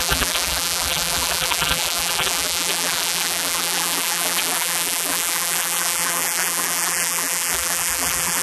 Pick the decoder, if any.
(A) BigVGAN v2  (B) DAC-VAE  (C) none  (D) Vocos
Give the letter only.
A